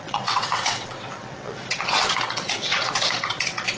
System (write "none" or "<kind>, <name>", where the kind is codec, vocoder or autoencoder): vocoder, WaveNeXt